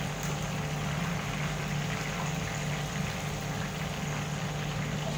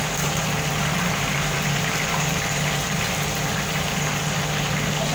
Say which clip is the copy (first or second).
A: second